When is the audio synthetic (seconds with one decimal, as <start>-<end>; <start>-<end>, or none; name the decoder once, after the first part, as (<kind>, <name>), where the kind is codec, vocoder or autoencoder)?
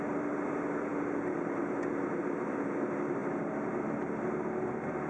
none